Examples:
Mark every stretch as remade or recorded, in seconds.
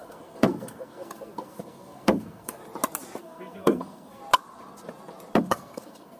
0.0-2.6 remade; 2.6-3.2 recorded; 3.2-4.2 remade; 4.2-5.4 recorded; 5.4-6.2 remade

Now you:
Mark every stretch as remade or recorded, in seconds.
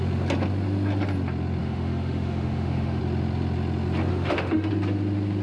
0.0-1.6 recorded; 1.6-3.0 remade; 3.0-4.1 recorded; 4.1-4.7 remade; 4.7-5.4 recorded